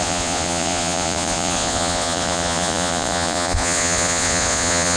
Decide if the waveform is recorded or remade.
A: remade